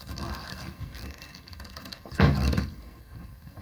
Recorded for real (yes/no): no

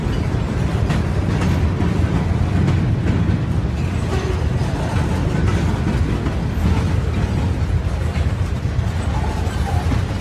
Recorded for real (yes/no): yes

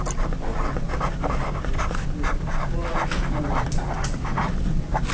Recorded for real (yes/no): yes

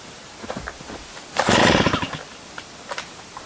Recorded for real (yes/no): yes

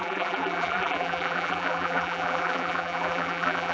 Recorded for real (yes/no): no